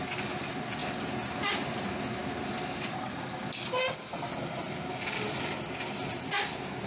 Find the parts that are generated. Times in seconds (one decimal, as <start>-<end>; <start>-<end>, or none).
none